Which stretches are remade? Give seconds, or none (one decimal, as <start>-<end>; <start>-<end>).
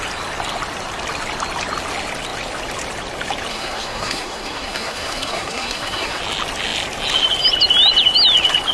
3.5-6.2